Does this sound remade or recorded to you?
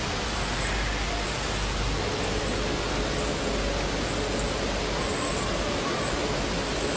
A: recorded